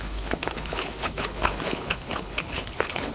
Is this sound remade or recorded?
remade